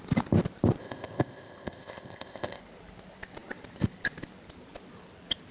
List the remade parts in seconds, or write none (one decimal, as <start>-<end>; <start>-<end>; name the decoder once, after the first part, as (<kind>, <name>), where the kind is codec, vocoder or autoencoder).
0.8-2.6 (codec, ZipCodec)